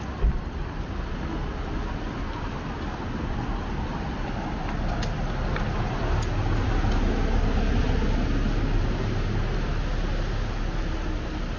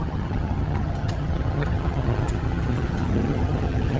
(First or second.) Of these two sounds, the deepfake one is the second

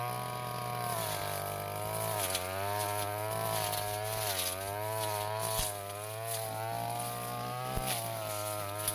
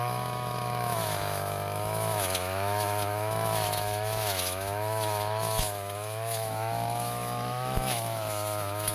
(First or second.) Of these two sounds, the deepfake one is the second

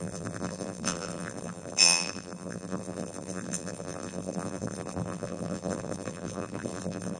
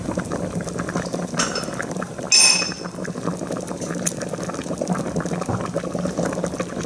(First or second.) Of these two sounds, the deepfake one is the first